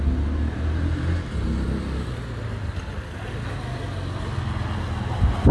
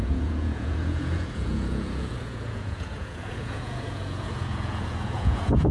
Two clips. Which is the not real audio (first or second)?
second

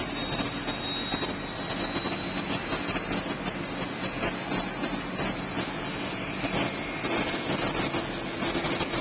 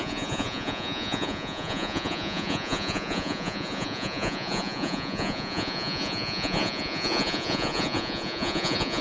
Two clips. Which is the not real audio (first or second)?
second